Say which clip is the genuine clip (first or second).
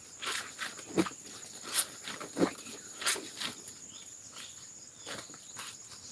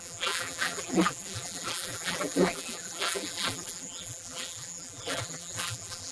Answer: first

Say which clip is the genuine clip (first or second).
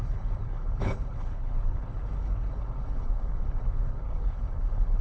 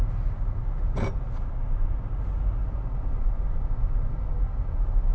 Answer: second